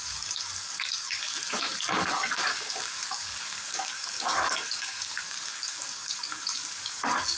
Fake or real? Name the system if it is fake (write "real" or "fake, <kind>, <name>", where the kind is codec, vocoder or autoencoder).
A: fake, codec, DAC